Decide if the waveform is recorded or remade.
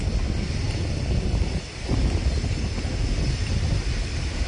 recorded